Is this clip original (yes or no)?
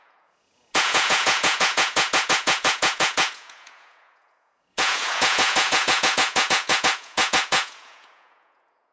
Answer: no